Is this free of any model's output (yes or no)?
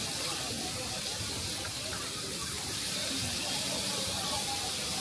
yes